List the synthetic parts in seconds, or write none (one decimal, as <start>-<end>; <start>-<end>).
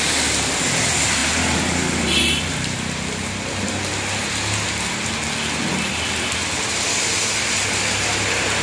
none